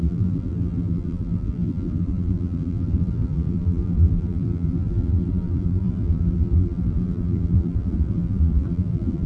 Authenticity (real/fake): fake